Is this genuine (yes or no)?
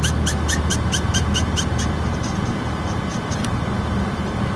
yes